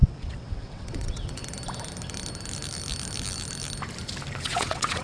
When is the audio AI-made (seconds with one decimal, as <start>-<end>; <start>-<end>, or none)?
0.0-1.4; 4.4-5.0